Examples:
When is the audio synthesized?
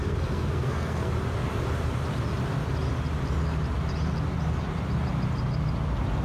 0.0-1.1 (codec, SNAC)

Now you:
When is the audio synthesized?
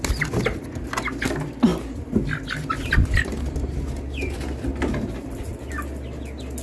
none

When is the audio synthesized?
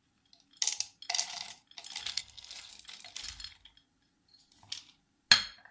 2.1-2.7 (codec, SNAC)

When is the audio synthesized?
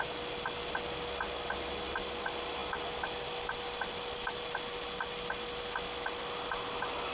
none